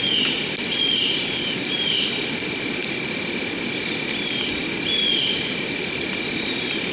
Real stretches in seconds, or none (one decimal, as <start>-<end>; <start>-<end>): 0.0-6.9